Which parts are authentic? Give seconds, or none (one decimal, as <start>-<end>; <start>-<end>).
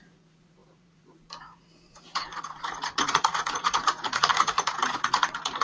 none